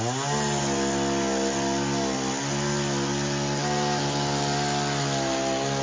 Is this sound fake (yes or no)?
no